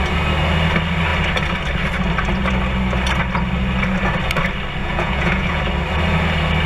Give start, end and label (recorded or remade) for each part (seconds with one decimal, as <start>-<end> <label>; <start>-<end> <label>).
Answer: 0.0-4.8 recorded; 4.8-5.6 remade; 5.6-6.7 recorded

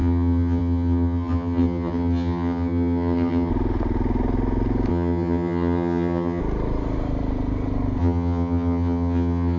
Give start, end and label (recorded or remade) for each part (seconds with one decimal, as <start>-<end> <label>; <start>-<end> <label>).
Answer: 0.0-3.5 remade; 3.5-4.9 recorded; 4.9-6.4 remade; 6.4-8.0 recorded; 8.0-9.6 remade

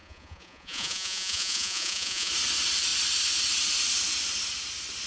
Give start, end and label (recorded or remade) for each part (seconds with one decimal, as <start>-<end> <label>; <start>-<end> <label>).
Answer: 0.0-2.3 remade; 2.3-5.1 recorded

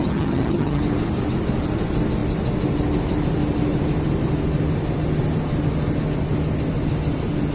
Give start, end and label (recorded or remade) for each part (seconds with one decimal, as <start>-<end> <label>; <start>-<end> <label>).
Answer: 0.0-0.8 remade; 0.8-7.5 recorded